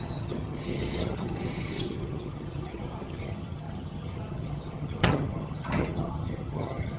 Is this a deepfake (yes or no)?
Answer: yes